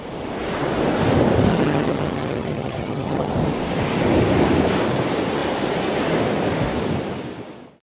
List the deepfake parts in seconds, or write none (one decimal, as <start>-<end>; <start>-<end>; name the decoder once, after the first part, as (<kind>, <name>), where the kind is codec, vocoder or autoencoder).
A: 1.5-3.3 (vocoder, HiFi-GAN)